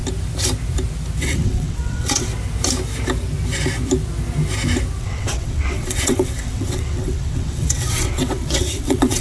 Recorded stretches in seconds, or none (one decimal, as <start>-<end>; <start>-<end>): 0.0-1.2; 2.3-5.0